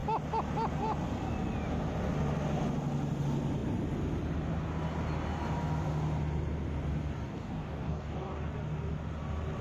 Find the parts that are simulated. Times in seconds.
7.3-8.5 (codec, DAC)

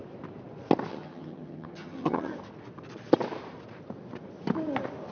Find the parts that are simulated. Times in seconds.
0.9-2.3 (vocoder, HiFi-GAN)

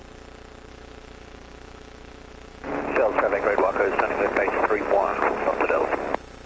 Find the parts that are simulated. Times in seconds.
0.7-2.8 (autoencoder, DAC-VAE)